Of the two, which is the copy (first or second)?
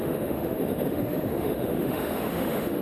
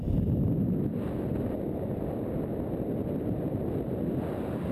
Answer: first